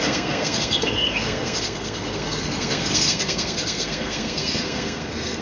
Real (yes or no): no